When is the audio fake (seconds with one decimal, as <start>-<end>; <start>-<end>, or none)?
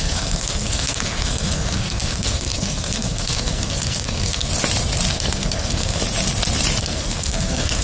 0.0-4.5; 5.1-6.0; 6.8-7.8